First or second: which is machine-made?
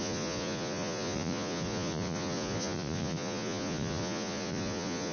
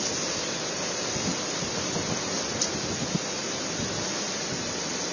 first